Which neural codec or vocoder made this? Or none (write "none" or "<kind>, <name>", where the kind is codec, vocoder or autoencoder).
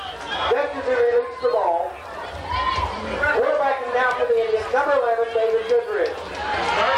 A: none